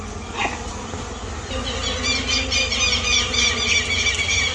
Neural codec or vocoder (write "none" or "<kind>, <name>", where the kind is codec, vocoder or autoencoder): none